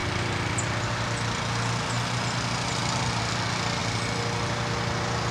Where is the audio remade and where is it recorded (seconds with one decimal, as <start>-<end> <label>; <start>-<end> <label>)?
0.0-5.3 recorded